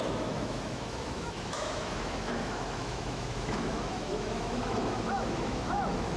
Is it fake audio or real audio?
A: fake